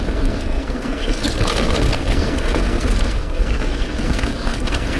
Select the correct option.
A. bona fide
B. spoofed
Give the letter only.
B